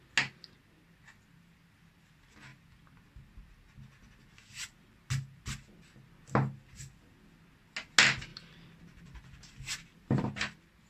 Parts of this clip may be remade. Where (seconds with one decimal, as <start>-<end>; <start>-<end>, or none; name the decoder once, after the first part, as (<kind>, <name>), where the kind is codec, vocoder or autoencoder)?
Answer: none